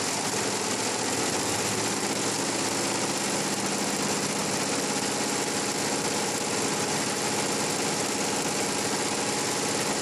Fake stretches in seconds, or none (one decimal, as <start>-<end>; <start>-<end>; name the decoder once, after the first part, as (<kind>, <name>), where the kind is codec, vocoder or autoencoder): none